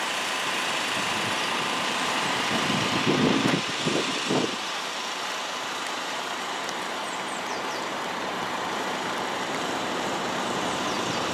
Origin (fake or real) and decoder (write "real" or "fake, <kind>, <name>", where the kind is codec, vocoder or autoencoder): fake, vocoder, BigVGAN v2